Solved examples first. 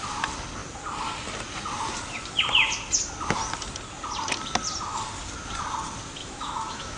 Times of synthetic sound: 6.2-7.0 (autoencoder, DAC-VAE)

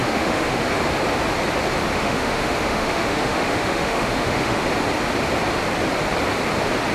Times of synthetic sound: 0.0-0.6 (autoencoder, DAC-VAE); 1.9-4.6

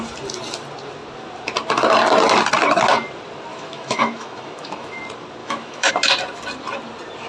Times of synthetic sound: 3.5-5.0 (autoencoder, DAC-VAE); 5.4-5.9

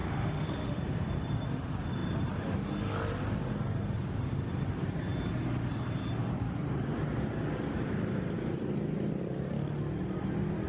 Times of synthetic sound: 0.0-0.8 (autoencoder, DAC-VAE)

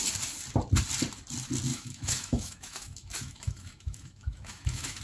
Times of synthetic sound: 1.7-5.0 (autoencoder, DAC-VAE)

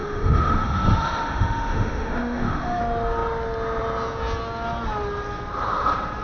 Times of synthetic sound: 0.0-2.8 (autoencoder, DAC-VAE)

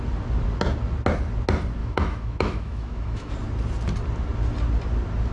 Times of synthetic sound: 1.8-3.3 (autoencoder, DAC-VAE)